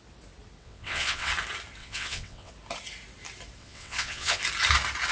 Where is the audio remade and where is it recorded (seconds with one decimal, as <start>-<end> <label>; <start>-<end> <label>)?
0.0-0.6 recorded; 0.6-1.3 remade; 1.3-1.8 recorded; 1.8-2.5 remade; 2.5-3.6 recorded; 3.6-4.4 remade; 4.4-5.1 recorded